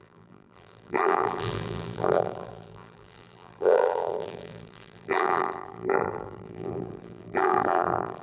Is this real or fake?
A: fake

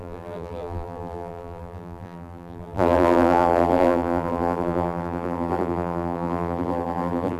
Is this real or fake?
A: fake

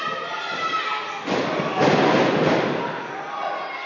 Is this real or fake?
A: real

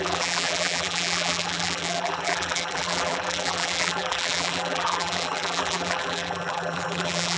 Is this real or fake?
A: fake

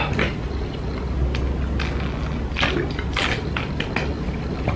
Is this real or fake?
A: real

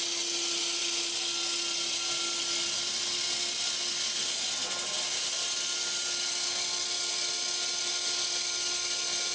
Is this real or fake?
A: real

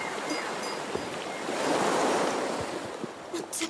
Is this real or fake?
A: fake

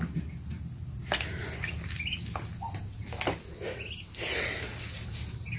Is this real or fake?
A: real